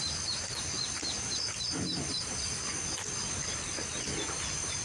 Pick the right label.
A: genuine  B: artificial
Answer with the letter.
A